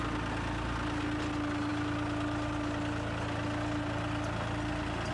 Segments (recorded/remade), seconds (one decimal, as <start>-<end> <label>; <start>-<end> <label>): 0.0-5.1 recorded